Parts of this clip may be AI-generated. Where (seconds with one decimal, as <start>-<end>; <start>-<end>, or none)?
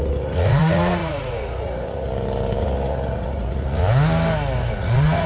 0.0-2.1; 2.6-3.8; 4.7-5.3